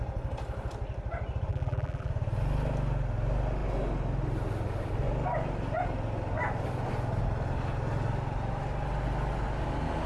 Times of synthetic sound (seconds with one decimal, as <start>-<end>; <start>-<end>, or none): 1.5-2.1